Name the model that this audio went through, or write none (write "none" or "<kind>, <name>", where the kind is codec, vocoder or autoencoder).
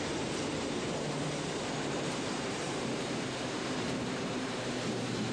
vocoder, BigVGAN v2